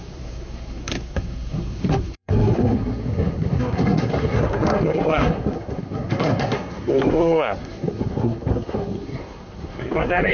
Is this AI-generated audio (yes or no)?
yes